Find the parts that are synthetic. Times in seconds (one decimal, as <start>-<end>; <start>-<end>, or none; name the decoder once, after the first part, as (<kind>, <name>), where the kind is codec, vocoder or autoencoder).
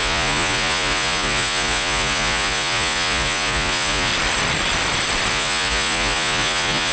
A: 0.0-4.1 (vocoder, Vocos); 5.3-6.9